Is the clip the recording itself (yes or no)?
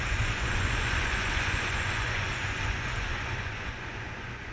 no